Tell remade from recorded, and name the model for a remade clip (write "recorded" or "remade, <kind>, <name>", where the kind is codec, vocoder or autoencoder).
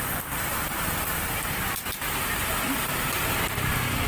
recorded